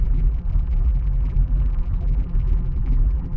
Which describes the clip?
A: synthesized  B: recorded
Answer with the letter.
A